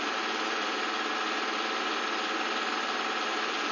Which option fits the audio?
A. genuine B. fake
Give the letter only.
B